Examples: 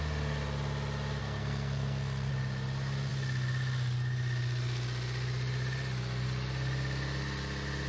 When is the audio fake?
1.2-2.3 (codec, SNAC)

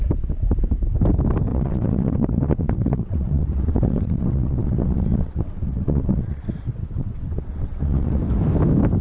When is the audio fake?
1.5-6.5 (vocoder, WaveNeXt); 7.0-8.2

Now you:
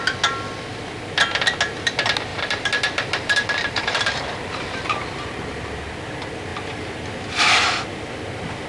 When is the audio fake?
2.3-5.7 (vocoder, BigVGAN v2)

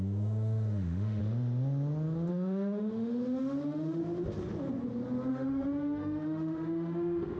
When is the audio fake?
0.0-1.2 (autoencoder, DAC-VAE); 2.3-4.0; 5.3-7.4